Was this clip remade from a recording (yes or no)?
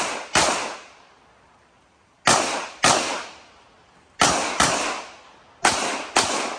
no